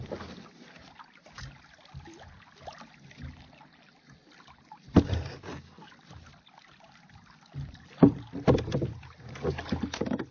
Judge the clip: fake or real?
real